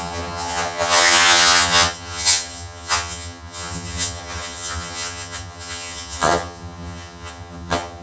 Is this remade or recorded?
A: remade